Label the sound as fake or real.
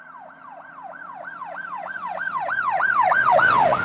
fake